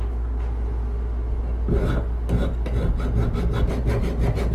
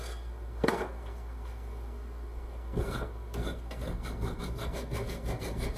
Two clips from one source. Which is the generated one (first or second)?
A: second